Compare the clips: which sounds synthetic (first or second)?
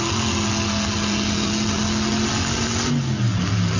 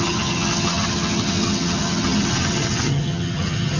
second